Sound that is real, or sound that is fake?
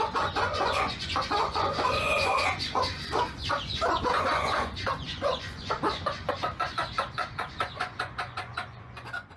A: fake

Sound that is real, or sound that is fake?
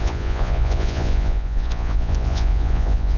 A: fake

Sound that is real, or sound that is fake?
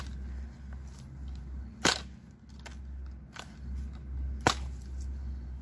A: real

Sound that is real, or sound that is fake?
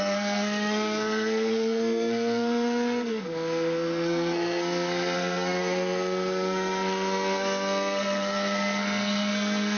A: fake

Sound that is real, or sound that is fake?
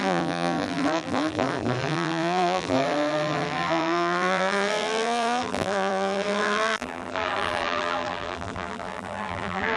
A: fake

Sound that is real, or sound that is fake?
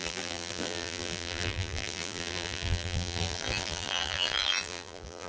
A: fake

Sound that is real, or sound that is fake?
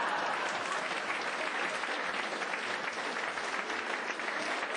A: real